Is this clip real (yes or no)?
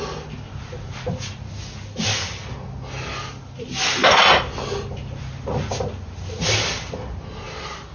yes